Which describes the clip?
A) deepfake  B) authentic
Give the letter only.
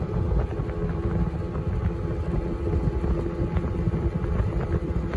B